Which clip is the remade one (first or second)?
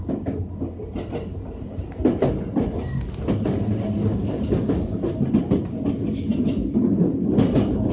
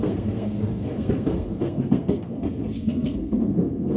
second